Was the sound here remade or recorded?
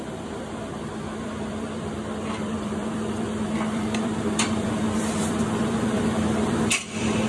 remade